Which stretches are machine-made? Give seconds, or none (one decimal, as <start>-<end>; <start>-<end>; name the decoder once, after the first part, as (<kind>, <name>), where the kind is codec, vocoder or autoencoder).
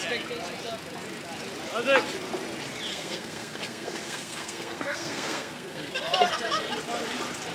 2.9-6.7 (codec, SNAC)